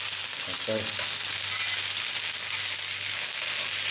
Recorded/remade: recorded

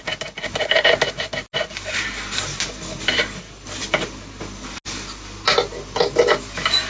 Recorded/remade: recorded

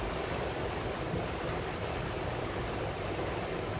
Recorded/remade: recorded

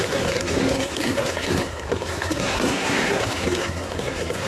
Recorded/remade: remade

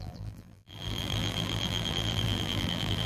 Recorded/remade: remade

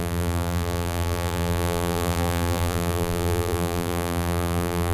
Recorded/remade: remade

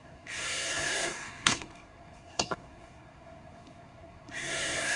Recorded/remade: remade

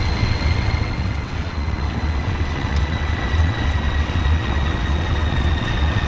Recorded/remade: remade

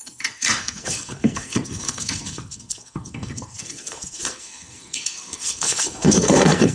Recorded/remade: remade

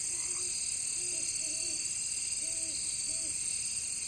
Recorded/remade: recorded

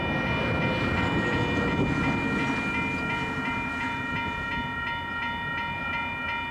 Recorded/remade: recorded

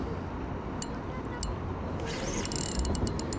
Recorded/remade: recorded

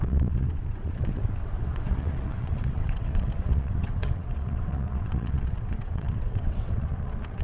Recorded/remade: remade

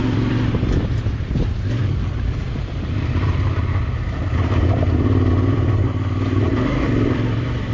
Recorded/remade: remade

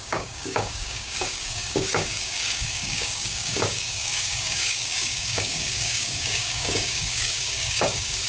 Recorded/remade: remade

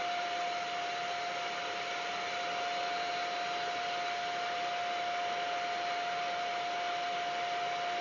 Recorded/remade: recorded